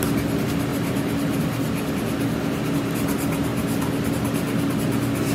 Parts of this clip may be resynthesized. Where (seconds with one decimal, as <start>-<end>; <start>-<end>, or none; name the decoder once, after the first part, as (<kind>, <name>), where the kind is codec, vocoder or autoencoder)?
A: 0.7-1.4 (vocoder, BigVGAN v2)